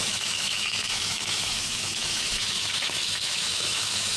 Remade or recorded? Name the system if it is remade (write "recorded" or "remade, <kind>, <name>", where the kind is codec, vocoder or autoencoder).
remade, autoencoder, DAC-VAE